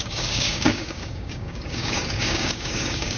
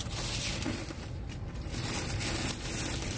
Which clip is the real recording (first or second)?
second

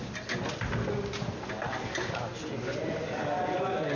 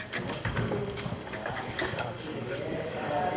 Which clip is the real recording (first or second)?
first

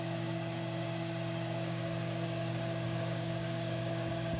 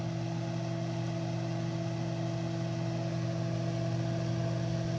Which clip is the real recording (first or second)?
second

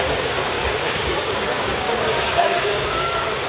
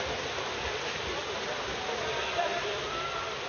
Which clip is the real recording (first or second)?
second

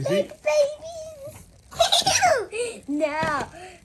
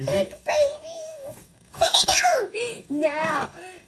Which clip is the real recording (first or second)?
first